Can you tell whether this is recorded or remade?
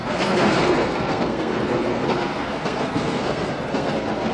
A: remade